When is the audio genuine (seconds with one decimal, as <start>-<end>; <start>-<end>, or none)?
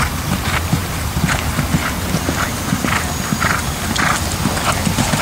0.0-5.2